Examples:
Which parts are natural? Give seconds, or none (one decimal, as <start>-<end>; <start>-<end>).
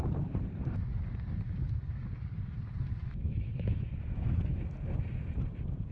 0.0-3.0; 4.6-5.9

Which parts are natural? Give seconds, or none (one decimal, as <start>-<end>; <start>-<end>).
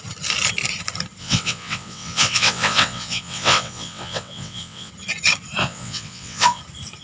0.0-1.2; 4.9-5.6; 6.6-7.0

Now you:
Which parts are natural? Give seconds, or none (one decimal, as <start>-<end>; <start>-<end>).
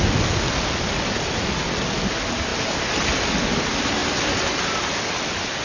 0.0-5.6